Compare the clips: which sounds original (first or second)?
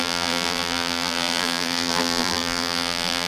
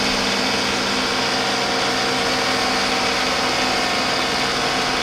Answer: second